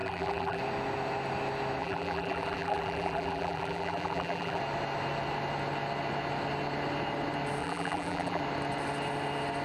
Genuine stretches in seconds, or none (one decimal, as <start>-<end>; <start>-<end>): 0.6-1.8; 4.6-7.6; 8.4-9.6